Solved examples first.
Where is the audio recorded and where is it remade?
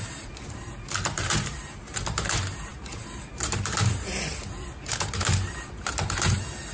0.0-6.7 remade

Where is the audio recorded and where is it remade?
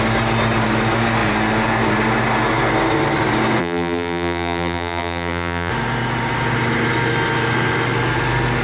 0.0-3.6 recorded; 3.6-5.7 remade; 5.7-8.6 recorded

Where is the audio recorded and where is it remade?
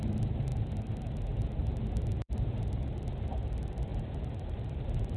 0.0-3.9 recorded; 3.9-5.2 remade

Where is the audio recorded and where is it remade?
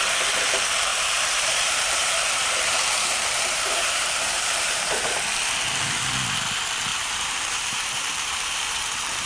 0.0-0.9 recorded; 0.9-5.2 remade; 5.2-6.9 recorded; 6.9-8.8 remade; 8.8-9.3 recorded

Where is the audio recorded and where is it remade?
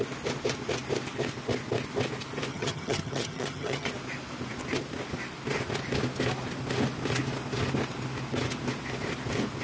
0.0-2.5 recorded; 2.5-3.9 remade; 3.9-9.6 recorded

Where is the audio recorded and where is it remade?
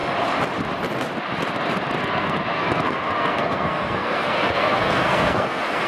0.0-2.0 recorded; 2.0-5.9 remade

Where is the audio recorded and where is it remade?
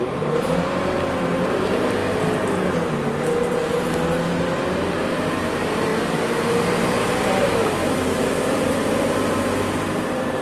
0.0-2.0 remade; 2.0-4.7 recorded; 4.7-5.9 remade; 5.9-6.5 recorded; 6.5-7.8 remade; 7.8-8.6 recorded; 8.6-10.4 remade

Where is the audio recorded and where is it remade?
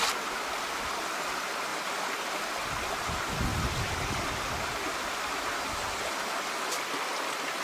0.0-3.5 recorded; 3.5-5.8 remade; 5.8-7.6 recorded